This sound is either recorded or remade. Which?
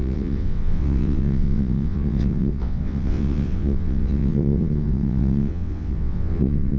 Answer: remade